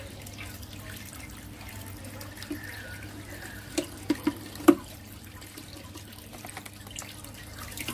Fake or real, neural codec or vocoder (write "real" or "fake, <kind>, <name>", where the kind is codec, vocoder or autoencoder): real